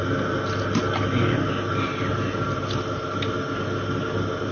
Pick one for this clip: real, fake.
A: real